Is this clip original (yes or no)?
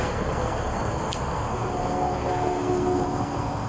no